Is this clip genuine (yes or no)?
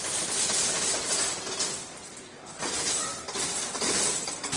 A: yes